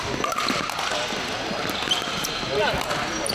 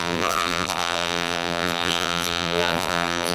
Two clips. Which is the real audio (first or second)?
first